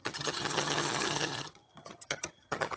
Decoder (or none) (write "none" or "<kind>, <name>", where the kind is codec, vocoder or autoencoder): vocoder, HiFi-GAN